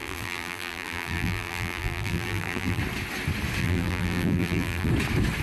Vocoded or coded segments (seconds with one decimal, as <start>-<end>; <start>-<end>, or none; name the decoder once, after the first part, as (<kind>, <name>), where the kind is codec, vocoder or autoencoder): 0.0-2.8 (vocoder, BigVGAN v2); 3.6-4.9